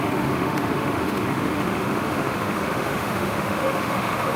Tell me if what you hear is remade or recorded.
remade